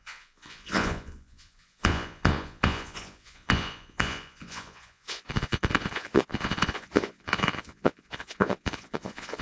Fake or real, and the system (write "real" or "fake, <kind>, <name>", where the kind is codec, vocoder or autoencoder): fake, vocoder, Vocos